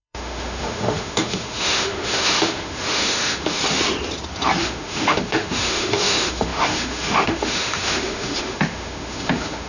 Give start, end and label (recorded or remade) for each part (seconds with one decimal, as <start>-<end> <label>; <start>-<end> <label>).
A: 0.0-3.6 remade; 3.6-4.6 recorded; 4.6-9.7 remade

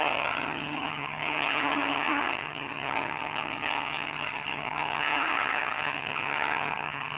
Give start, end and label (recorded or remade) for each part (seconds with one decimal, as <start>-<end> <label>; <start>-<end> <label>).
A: 0.0-7.2 remade

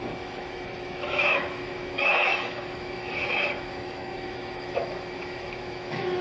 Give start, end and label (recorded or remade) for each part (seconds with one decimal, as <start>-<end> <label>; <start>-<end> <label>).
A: 0.0-6.2 remade

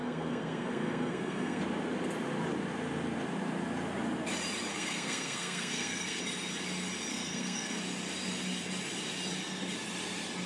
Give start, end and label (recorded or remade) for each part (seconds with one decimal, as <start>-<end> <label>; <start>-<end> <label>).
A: 0.0-1.6 remade; 1.6-4.7 recorded; 4.7-6.2 remade; 6.2-7.1 recorded; 7.1-7.8 remade; 7.8-10.5 recorded

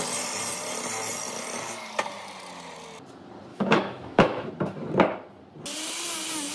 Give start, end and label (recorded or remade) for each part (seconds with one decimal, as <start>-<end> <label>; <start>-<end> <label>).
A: 0.0-3.5 recorded; 3.5-4.5 remade; 4.5-6.5 recorded

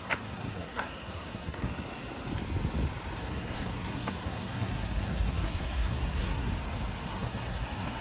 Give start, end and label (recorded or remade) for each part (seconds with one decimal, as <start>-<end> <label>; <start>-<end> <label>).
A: 0.0-1.7 remade; 1.7-3.2 recorded; 3.2-6.5 remade; 6.5-7.1 recorded; 7.1-8.0 remade

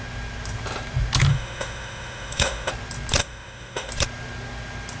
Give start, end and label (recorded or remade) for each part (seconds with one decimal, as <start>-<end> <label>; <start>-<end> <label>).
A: 0.0-1.3 recorded; 1.3-2.7 remade; 2.7-3.2 recorded; 3.2-3.9 remade; 3.9-5.0 recorded

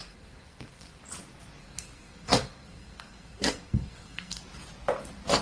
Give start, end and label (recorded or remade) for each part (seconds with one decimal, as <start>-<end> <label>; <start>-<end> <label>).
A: 0.0-1.0 remade; 1.0-1.6 recorded; 1.6-4.4 remade; 4.4-5.4 recorded